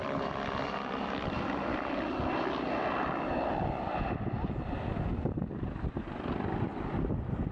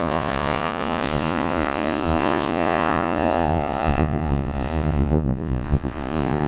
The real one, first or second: first